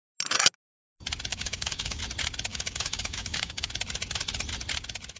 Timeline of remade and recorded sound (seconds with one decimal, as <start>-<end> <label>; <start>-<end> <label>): 0.0-1.3 recorded; 1.3-2.0 remade; 2.0-2.5 recorded; 2.5-3.7 remade; 3.7-5.2 recorded